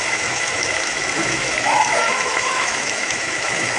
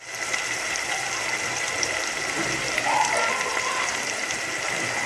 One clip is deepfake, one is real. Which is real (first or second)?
second